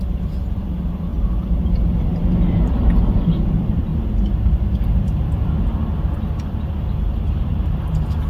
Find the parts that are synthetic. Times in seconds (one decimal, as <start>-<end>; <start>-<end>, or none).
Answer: 0.0-1.1; 1.9-3.9; 7.4-8.3

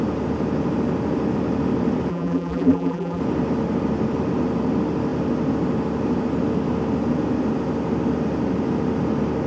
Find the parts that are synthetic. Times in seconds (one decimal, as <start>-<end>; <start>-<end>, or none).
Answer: 2.1-3.2

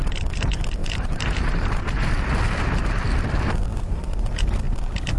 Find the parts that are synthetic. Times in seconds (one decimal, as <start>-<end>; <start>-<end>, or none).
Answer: 0.8-2.1

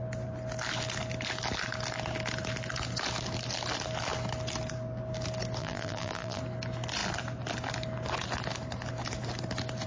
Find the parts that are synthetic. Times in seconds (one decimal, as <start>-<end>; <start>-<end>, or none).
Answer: 5.6-6.4

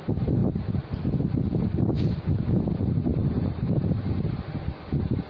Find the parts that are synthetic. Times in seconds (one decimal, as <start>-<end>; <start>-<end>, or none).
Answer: 0.4-2.7; 3.1-4.8

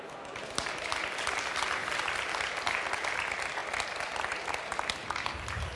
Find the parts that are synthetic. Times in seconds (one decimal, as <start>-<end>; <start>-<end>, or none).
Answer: 1.8-2.4; 3.6-4.6

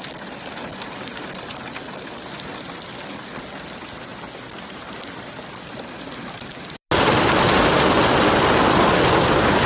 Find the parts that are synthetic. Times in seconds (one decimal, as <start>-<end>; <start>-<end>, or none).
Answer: none